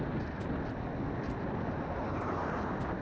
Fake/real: real